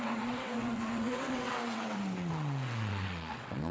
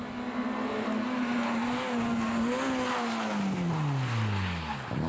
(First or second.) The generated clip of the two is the first